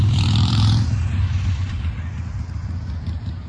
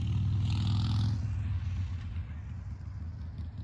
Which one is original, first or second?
second